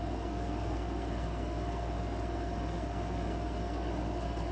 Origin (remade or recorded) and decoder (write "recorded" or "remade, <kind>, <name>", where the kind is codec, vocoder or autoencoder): remade, codec, SNAC